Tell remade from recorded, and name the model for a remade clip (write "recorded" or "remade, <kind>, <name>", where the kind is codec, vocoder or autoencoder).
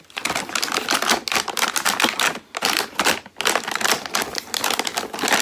recorded